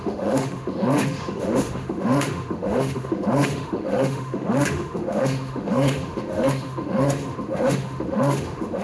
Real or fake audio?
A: fake